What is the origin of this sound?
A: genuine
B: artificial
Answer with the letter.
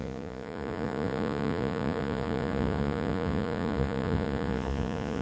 B